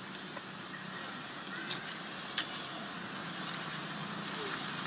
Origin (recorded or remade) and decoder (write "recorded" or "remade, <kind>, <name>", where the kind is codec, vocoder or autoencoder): recorded